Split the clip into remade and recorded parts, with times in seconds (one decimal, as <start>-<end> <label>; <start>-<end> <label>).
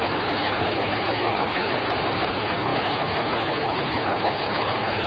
0.0-1.8 remade; 1.8-2.3 recorded; 2.3-5.1 remade